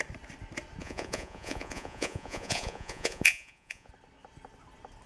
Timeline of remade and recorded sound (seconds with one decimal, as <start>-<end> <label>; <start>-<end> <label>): 0.0-0.8 recorded; 0.8-3.9 remade; 3.9-5.1 recorded